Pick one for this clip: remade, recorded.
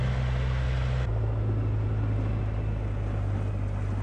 recorded